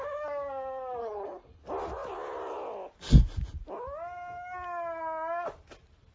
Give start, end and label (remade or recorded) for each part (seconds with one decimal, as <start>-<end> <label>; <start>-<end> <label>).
0.0-1.0 recorded; 1.0-1.6 remade; 1.6-6.1 recorded